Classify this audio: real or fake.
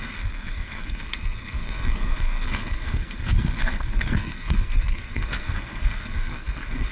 fake